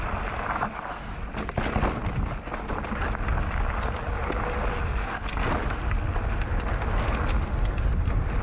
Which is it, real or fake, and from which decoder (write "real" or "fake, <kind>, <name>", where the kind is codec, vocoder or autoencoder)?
real